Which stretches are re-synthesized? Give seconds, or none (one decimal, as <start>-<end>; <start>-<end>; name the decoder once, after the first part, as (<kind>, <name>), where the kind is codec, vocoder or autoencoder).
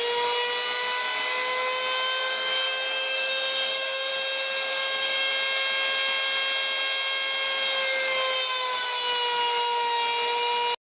2.2-4.1 (codec, DAC); 4.7-5.3